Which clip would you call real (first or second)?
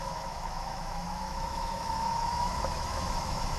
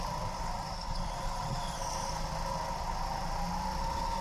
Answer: second